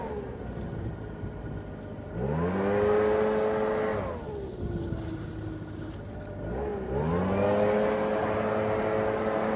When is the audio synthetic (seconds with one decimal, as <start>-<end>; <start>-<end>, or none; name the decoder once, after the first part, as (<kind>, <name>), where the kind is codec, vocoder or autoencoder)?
none